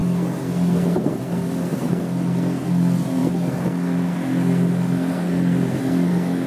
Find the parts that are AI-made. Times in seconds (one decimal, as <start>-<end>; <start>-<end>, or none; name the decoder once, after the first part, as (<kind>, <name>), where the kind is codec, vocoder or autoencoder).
0.0-6.5 (codec, SNAC)

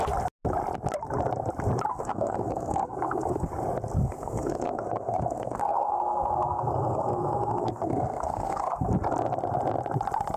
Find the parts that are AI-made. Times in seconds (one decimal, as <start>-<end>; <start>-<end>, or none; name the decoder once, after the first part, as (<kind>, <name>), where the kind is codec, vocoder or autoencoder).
1.9-3.5 (codec, SNAC); 4.0-8.9

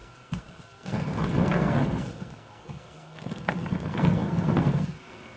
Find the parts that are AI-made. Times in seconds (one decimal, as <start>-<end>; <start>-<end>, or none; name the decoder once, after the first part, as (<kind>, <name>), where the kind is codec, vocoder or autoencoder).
0.0-5.4 (codec, SNAC)

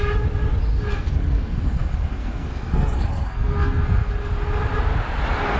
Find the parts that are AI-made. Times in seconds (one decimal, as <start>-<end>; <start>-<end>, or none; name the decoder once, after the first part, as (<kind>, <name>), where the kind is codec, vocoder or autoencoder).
0.7-4.1 (codec, SNAC)

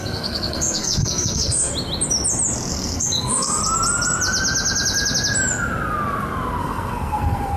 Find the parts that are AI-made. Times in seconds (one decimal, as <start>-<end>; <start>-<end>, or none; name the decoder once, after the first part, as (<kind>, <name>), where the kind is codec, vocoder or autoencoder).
0.0-1.7 (codec, SNAC); 2.7-3.6; 6.6-7.6